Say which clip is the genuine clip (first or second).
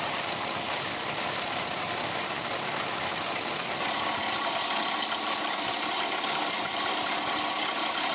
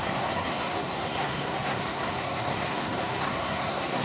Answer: first